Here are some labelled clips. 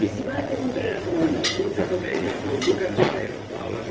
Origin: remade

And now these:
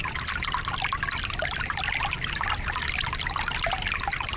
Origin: recorded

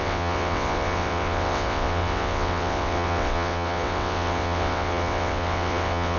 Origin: remade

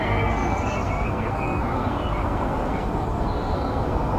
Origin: remade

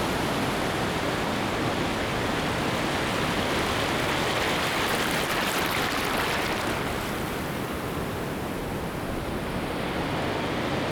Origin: recorded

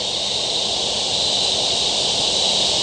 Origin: recorded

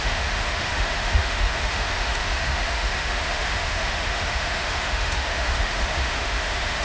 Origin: remade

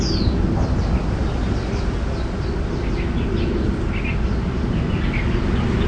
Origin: recorded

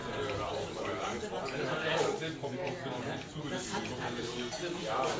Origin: recorded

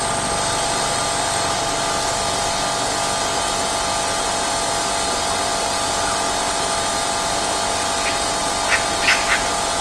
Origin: recorded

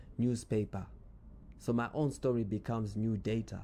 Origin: remade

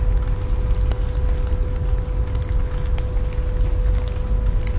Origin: recorded